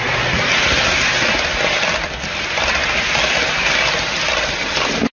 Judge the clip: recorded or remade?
recorded